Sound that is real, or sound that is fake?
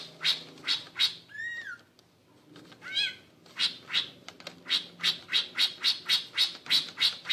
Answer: real